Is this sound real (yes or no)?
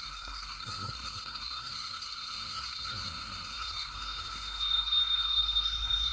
no